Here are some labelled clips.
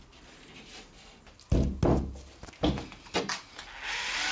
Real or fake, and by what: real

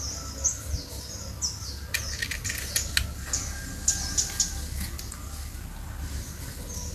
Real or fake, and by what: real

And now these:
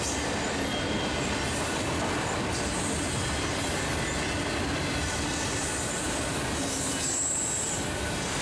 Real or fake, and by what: real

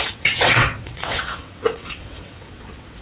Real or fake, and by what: fake, vocoder, WaveNeXt